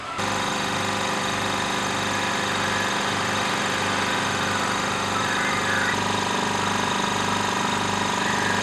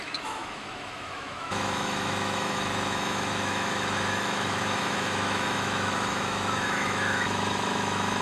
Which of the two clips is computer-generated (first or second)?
second